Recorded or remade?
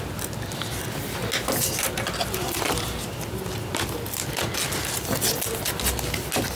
recorded